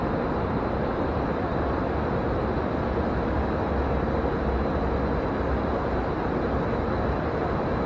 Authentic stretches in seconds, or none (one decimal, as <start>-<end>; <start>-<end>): 0.0-7.9